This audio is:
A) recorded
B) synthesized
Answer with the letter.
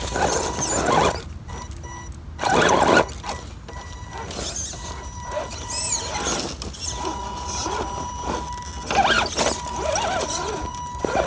A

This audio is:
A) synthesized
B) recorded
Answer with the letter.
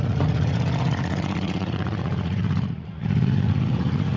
A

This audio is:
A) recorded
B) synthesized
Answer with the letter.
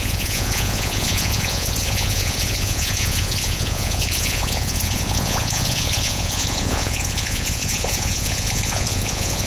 B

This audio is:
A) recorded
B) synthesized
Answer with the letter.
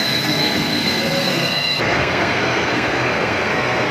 B